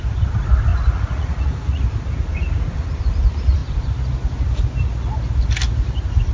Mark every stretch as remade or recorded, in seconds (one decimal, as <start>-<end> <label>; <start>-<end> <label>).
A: 0.0-0.7 recorded; 0.7-1.8 remade; 1.8-6.3 recorded